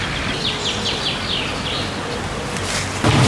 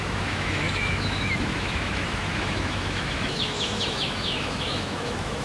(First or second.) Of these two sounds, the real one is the first